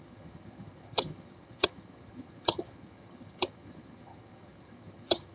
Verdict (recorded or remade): remade